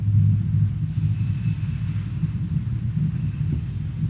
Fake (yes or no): no